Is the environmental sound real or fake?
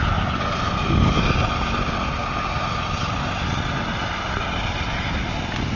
real